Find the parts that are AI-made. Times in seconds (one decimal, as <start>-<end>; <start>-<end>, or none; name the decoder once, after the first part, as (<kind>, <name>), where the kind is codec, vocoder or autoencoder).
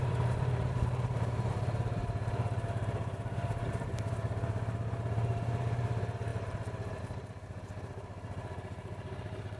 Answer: 0.0-9.6 (vocoder, BigVGAN v2)